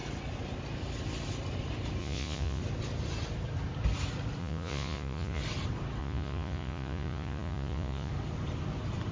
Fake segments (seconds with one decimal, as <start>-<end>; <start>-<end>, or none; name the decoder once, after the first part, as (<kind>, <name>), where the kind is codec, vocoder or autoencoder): 2.0-2.6 (vocoder, Vocos); 4.4-5.4; 6.0-8.1